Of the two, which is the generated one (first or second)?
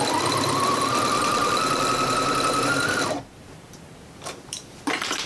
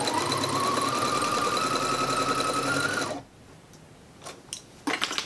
first